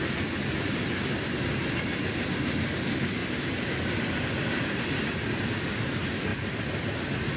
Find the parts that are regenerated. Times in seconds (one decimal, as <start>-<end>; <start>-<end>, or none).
none